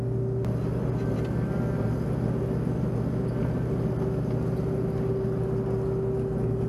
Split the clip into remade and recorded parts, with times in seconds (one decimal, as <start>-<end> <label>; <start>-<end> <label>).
0.0-6.7 recorded